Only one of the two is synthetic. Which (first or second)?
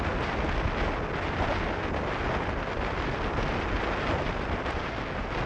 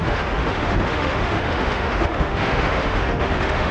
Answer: second